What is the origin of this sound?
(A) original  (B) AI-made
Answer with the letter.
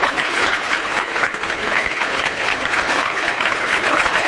B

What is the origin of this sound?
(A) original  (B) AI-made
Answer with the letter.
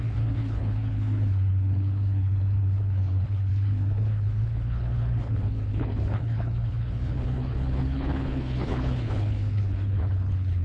B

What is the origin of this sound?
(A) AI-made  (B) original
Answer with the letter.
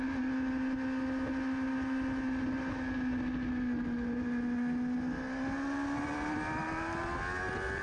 B